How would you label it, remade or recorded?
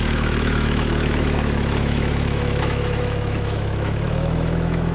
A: remade